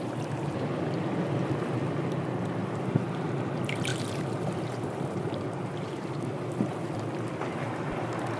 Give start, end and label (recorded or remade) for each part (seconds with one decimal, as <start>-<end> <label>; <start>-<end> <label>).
0.0-3.9 recorded; 3.9-6.1 remade; 6.1-8.4 recorded